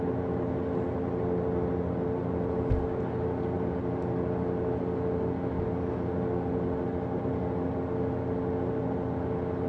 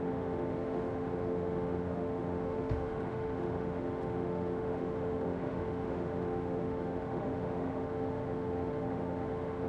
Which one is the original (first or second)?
first